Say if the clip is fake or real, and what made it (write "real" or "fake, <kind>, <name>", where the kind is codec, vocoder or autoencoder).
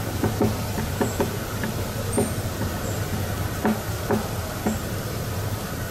real